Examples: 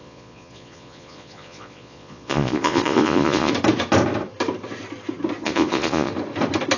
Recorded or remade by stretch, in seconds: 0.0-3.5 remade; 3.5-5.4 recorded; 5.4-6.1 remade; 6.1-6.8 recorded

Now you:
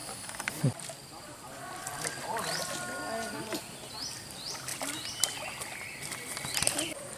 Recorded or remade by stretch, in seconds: 0.0-0.6 remade; 0.6-4.7 recorded; 4.7-6.0 remade; 6.0-7.2 recorded

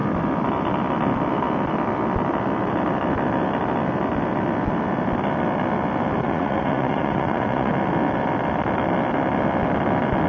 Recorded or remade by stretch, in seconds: 0.0-6.2 recorded; 6.2-7.7 remade; 7.7-10.3 recorded

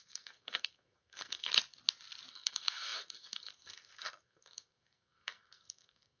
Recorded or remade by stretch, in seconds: 0.0-1.5 remade; 1.5-2.3 recorded; 2.3-6.2 remade

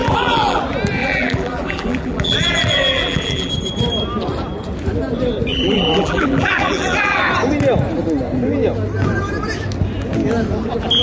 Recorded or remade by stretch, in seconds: 0.0-0.6 remade; 0.6-1.0 recorded; 1.0-3.5 remade; 3.5-5.5 recorded; 5.5-7.2 remade; 7.2-11.0 recorded

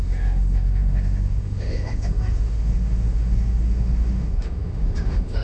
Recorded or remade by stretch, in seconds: 0.0-5.4 remade